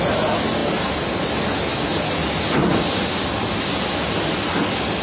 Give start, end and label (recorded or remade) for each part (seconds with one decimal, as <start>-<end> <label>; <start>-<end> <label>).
0.0-5.0 recorded